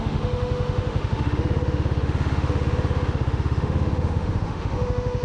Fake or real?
fake